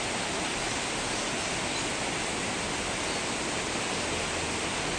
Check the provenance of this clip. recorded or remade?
recorded